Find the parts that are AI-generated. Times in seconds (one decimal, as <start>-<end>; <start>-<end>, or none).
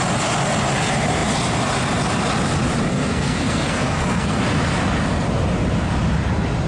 2.9-4.4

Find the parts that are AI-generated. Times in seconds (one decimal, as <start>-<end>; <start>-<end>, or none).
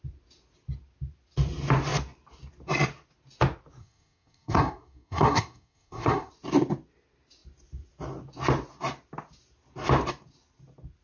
3.8-6.3